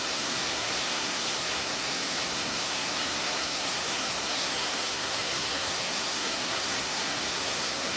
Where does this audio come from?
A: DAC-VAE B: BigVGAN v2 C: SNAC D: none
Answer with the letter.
C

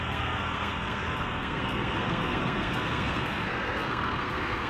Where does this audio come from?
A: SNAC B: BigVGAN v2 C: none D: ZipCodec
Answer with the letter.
A